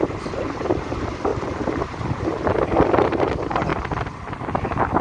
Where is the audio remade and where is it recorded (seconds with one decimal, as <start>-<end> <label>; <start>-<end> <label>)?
0.0-1.3 remade; 1.3-1.8 recorded; 1.8-3.7 remade; 3.7-5.0 recorded